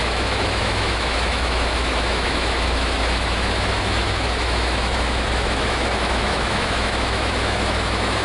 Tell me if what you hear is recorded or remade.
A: remade